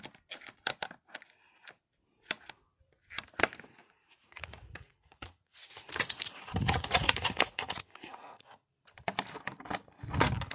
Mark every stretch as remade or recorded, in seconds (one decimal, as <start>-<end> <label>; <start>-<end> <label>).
0.0-3.8 recorded; 3.8-8.7 remade; 8.7-10.5 recorded